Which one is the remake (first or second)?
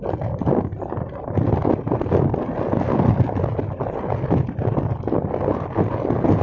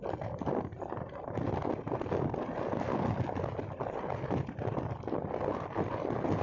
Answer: second